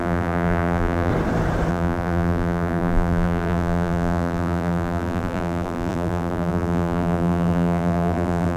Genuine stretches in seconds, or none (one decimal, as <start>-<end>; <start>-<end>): 1.1-1.7

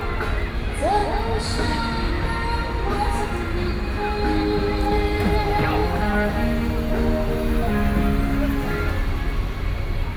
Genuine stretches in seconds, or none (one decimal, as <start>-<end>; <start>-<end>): 0.0-10.2